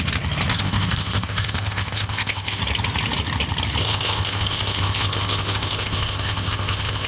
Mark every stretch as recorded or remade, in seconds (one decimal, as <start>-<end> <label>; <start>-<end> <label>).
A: 0.0-0.5 recorded; 0.5-2.6 remade; 2.6-3.8 recorded; 3.8-7.1 remade